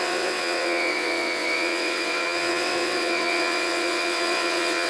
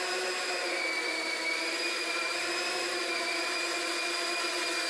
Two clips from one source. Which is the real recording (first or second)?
second